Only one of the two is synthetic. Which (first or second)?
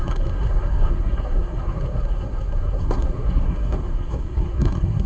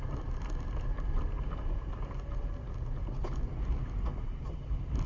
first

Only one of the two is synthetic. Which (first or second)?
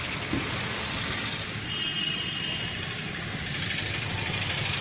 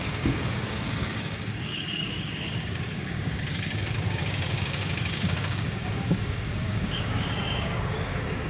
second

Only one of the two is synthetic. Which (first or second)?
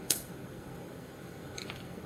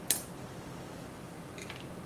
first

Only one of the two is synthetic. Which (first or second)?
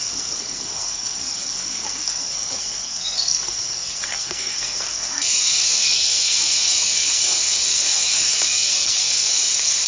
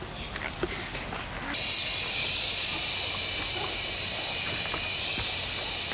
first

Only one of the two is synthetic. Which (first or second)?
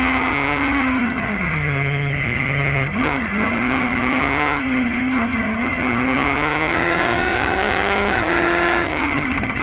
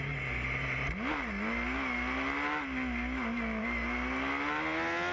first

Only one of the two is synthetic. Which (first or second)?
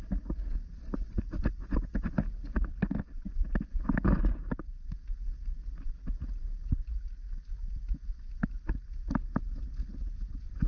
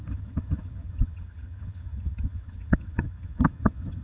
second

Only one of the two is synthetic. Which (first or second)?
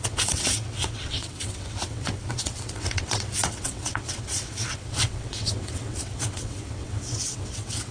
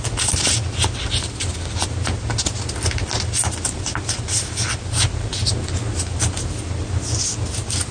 first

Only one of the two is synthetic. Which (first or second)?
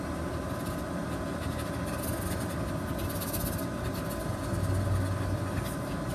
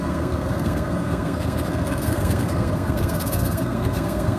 second